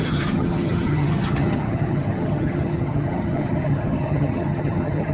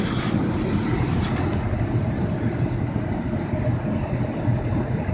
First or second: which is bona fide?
second